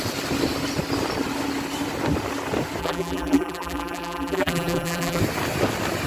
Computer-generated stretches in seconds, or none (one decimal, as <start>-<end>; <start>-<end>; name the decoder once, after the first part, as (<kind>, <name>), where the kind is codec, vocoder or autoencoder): 2.8-5.2 (vocoder, BigVGAN v2)